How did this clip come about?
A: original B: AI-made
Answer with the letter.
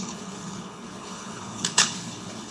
B